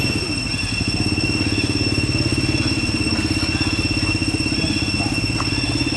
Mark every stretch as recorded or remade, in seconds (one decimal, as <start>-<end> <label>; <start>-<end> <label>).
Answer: 0.0-6.0 recorded